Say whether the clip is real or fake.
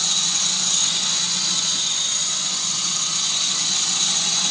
fake